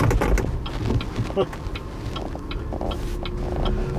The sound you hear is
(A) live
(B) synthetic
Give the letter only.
A